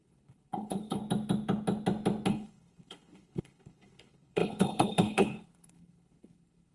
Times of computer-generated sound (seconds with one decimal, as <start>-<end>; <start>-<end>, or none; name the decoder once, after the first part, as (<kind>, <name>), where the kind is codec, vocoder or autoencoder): 0.0-1.0 (codec, HILCodec); 2.3-6.7